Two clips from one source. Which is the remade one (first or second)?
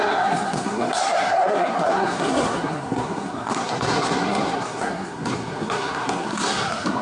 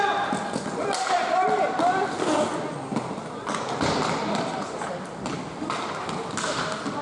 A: first